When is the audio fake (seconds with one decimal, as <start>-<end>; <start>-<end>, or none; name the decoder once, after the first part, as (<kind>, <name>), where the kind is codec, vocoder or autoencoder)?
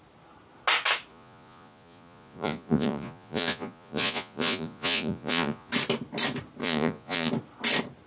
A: 1.1-5.7 (vocoder, Vocos); 6.6-7.3